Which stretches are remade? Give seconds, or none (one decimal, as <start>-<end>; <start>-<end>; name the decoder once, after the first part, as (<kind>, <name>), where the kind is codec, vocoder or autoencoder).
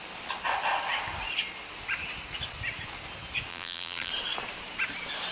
3.5-4.1 (vocoder, BigVGAN v2)